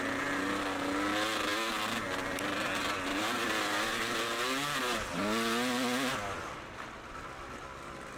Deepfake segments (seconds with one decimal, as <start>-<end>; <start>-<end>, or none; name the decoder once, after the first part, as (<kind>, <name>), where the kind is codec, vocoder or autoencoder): none